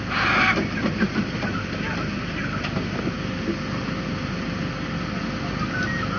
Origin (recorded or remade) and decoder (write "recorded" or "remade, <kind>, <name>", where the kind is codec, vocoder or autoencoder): recorded